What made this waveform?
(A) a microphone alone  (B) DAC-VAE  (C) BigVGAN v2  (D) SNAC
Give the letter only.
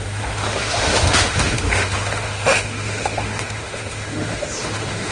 B